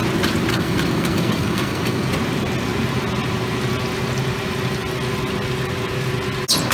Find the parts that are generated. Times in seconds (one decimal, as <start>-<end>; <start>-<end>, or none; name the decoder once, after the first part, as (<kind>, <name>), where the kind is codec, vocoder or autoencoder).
0.5-2.1 (codec, SNAC)